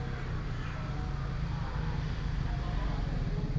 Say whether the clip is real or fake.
real